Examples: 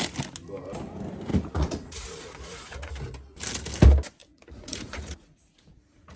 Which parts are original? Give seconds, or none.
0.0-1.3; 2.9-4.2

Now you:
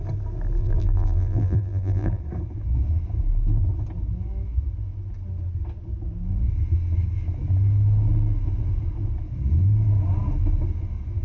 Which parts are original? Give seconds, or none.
0.0-0.6; 2.2-11.2

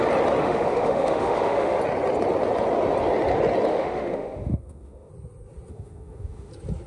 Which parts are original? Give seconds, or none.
0.0-0.4; 1.8-3.7; 5.1-5.7; 6.5-6.9

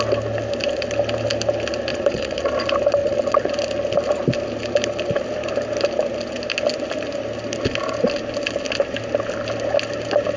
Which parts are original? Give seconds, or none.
0.0-1.9; 2.5-3.0; 3.5-10.4

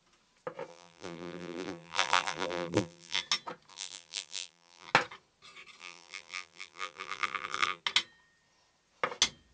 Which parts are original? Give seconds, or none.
0.0-0.7; 3.2-3.7; 4.9-5.8; 7.8-9.5

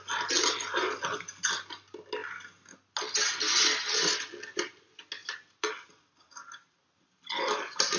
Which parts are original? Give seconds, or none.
0.0-8.0

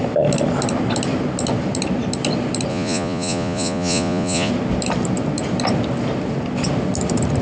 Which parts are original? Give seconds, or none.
0.0-2.7; 4.5-7.4